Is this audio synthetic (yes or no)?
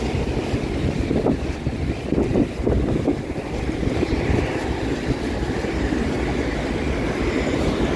no